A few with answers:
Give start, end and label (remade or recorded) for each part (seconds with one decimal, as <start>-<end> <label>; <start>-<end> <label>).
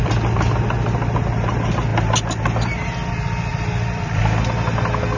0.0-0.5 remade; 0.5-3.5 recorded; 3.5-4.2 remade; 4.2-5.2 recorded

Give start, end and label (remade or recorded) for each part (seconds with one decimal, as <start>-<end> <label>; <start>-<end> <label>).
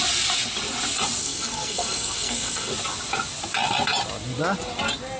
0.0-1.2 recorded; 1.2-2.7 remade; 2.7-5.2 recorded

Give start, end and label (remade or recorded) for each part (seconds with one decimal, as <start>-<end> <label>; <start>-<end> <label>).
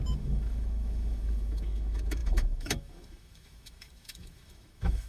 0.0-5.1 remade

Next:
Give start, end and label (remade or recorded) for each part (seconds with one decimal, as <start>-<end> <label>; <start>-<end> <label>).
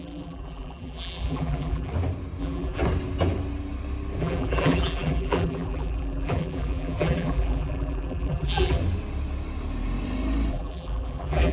0.0-1.9 remade; 1.9-2.4 recorded; 2.4-2.8 remade; 2.8-4.2 recorded; 4.2-8.8 remade; 8.8-10.5 recorded; 10.5-11.5 remade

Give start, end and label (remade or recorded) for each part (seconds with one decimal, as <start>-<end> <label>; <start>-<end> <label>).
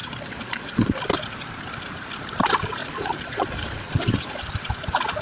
0.0-1.0 remade; 1.0-2.8 recorded; 2.8-4.4 remade; 4.4-5.2 recorded